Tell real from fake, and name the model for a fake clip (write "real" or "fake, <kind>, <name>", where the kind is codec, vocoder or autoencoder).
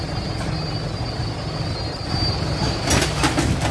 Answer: real